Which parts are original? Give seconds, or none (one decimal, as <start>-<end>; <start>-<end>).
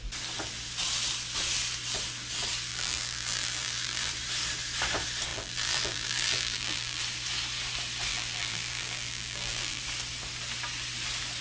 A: 0.0-2.7; 4.1-5.3; 7.0-8.1; 9.8-11.4